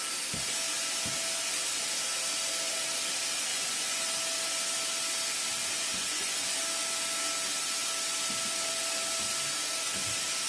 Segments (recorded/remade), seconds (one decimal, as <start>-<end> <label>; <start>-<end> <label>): 0.0-3.5 recorded; 3.5-4.0 remade; 4.0-5.6 recorded; 5.6-6.6 remade; 6.6-10.5 recorded